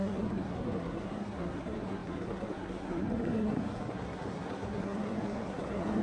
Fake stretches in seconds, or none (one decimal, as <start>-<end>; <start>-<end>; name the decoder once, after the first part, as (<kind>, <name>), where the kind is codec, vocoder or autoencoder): 0.0-6.0 (codec, SNAC)